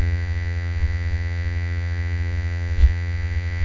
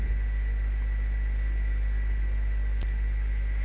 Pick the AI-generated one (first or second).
first